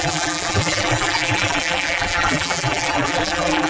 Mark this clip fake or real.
fake